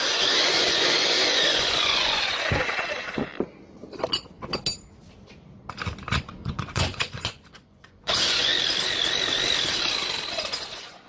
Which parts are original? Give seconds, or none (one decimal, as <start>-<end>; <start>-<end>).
3.3-6.2; 8.5-10.3

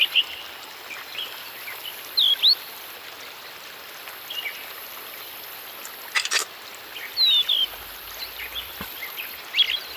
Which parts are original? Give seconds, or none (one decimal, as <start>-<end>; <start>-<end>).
0.0-10.0

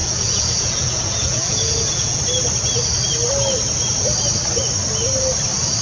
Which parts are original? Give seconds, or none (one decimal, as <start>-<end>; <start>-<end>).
2.2-5.8

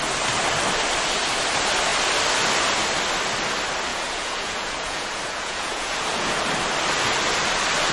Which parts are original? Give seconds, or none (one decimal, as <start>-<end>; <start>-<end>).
0.0-3.9; 6.4-7.9

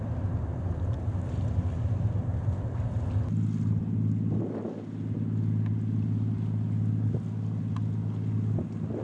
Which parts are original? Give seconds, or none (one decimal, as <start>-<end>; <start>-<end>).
0.0-9.0

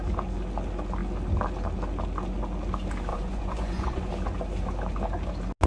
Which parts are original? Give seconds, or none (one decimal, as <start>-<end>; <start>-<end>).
0.0-3.1; 4.1-5.7